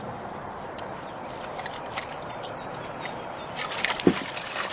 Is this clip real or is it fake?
real